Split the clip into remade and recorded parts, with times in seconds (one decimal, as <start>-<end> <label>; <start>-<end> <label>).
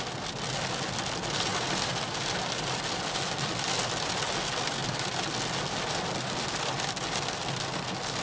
0.0-1.5 recorded; 1.5-4.2 remade; 4.2-4.8 recorded; 4.8-7.3 remade; 7.3-8.2 recorded